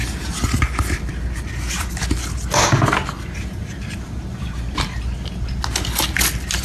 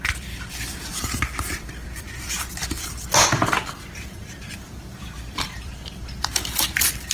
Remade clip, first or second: second